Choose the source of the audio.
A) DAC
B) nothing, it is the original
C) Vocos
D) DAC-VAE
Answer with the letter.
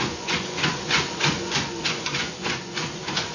C